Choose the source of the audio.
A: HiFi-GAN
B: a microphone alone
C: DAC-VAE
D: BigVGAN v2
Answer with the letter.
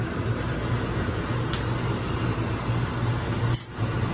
B